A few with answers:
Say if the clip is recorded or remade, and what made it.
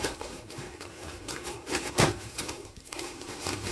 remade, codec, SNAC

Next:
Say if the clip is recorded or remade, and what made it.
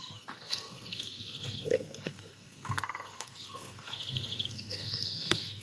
remade, codec, SNAC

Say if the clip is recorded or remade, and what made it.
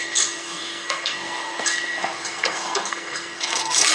remade, codec, SNAC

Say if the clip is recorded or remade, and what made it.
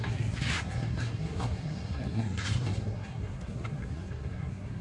remade, codec, SNAC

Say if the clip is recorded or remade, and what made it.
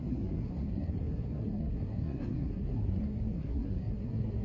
remade, codec, SNAC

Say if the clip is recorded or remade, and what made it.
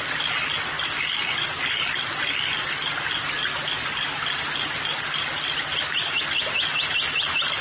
recorded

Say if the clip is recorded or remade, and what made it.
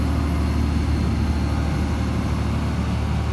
recorded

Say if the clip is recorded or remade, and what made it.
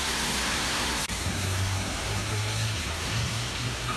remade, codec, SNAC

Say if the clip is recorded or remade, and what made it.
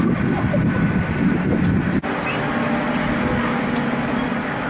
recorded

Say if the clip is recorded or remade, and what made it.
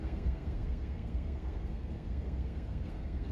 remade, codec, SNAC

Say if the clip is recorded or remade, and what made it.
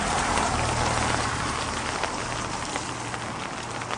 recorded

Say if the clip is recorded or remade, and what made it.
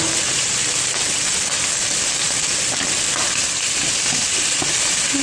recorded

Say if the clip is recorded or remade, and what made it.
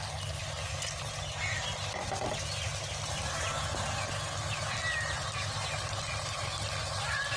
recorded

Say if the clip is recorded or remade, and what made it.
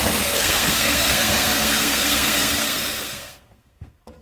remade, codec, SNAC